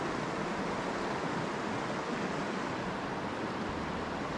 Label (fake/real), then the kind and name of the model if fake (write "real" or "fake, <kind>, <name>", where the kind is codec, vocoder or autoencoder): real